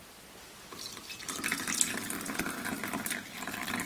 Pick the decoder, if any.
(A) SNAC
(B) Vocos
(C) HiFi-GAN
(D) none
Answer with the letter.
D